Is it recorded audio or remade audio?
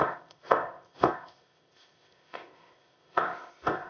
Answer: remade